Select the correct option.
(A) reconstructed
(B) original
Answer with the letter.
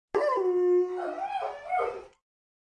B